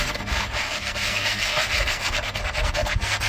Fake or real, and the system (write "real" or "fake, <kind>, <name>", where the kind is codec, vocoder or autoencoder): fake, codec, SNAC